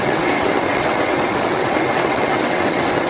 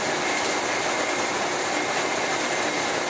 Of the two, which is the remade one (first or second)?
first